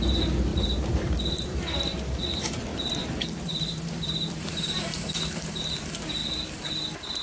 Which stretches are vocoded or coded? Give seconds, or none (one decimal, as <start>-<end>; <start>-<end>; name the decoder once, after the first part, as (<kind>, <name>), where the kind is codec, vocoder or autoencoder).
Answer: 0.5-2.2 (vocoder, BigVGAN v2); 2.7-5.6